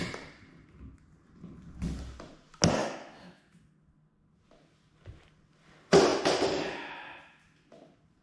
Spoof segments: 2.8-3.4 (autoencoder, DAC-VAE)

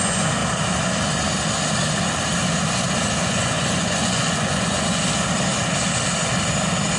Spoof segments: 0.0-0.4 (vocoder, Vocos); 3.3-5.0

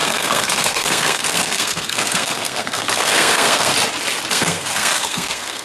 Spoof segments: 0.0-3.7 (codec, SNAC); 4.3-5.6

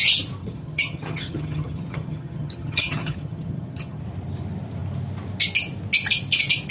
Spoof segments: 0.4-4.0 (vocoder, HiFi-GAN)